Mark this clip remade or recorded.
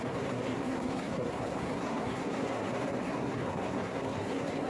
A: remade